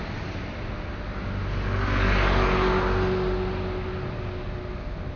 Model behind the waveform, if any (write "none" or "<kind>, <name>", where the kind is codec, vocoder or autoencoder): none